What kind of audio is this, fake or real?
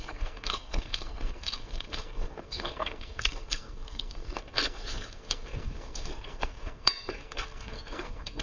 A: fake